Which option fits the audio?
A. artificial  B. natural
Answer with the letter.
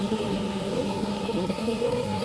A